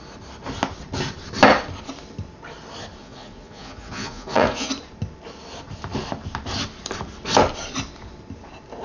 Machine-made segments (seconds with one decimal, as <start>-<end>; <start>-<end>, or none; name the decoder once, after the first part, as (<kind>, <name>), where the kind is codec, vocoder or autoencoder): 3.0-4.7 (vocoder, Vocos)